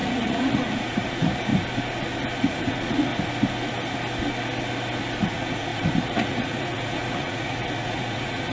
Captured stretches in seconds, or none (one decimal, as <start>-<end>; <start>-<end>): 1.5-2.4; 3.1-5.2